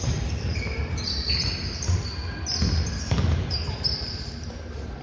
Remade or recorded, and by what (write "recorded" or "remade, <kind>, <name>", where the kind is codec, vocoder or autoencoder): remade, vocoder, BigVGAN v2